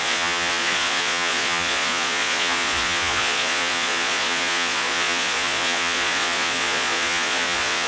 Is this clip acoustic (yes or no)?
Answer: no